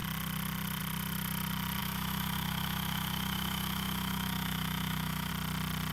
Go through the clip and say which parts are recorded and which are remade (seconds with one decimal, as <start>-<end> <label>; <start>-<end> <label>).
0.0-1.8 recorded; 1.8-5.3 remade; 5.3-5.9 recorded